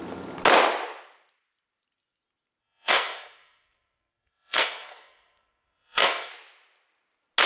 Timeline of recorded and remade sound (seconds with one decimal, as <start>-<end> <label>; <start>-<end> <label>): 0.0-2.6 recorded; 2.6-6.3 remade; 6.3-7.5 recorded

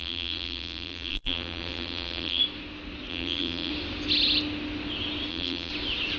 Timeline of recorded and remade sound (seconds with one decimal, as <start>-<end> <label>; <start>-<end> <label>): 0.0-2.4 remade; 2.4-3.1 recorded; 3.1-3.7 remade; 3.7-5.3 recorded; 5.3-5.7 remade; 5.7-6.2 recorded